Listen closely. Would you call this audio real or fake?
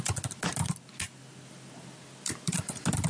real